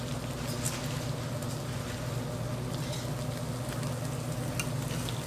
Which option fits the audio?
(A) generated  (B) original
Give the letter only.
B